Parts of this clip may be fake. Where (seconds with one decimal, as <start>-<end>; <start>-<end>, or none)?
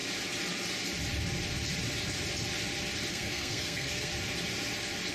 3.1-4.1